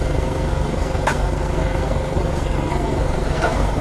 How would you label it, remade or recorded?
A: remade